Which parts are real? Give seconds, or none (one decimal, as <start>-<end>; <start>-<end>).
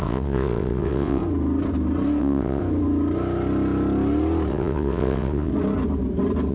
1.2-2.2; 2.6-4.5; 5.5-6.5